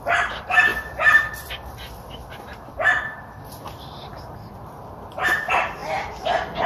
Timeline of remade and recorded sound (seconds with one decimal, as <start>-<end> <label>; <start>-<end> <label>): 0.0-0.7 recorded; 0.7-4.5 remade; 4.5-6.7 recorded